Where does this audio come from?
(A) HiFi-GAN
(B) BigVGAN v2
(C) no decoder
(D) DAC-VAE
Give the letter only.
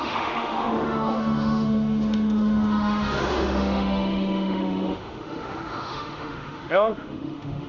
D